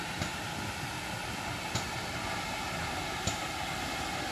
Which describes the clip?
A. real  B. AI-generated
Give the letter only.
A